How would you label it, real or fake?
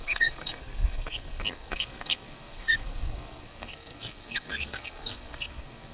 fake